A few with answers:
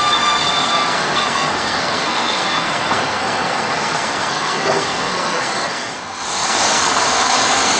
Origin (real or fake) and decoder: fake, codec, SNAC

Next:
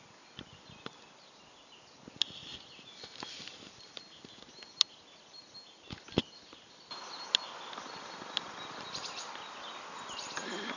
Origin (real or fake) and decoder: real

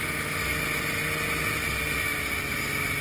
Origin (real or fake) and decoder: real